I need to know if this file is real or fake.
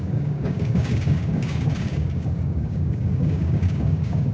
fake